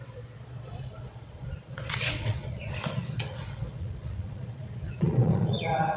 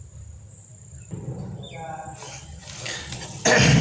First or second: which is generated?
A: first